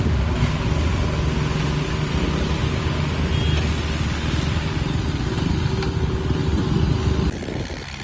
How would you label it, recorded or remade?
recorded